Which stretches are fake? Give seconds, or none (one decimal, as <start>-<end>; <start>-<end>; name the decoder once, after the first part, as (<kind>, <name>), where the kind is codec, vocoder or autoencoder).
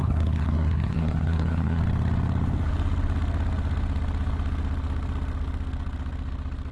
0.0-1.8 (codec, SNAC)